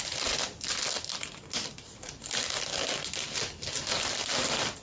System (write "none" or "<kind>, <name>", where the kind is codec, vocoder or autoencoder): none